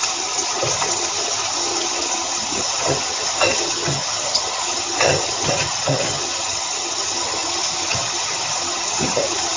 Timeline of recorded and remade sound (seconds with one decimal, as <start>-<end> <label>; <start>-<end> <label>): 0.0-9.6 remade

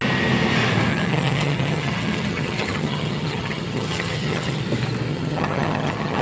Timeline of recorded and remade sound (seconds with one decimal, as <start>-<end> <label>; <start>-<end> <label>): 0.0-0.9 recorded; 0.9-4.6 remade; 4.6-5.1 recorded; 5.1-6.2 remade

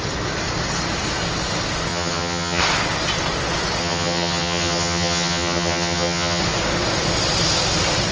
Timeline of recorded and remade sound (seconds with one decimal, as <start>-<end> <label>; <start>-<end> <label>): 0.0-1.9 recorded; 1.9-2.6 remade; 2.6-3.8 recorded; 3.8-6.4 remade; 6.4-8.1 recorded

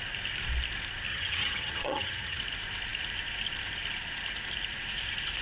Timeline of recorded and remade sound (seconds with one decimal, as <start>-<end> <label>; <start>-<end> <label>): 0.0-1.1 recorded; 1.1-2.4 remade; 2.4-5.4 recorded